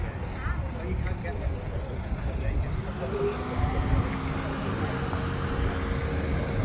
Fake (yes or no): no